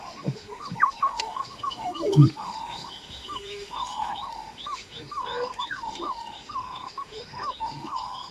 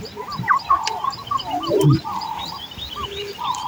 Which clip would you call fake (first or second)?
first